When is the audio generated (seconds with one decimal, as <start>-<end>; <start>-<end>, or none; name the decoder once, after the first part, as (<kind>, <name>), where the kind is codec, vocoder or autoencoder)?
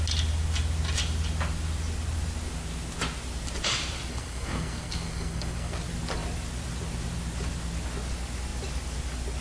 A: 4.1-5.8 (codec, SNAC)